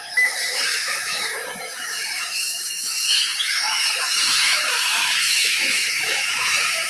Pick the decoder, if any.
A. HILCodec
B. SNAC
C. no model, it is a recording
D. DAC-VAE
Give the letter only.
D